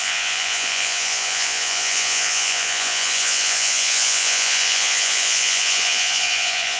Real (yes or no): no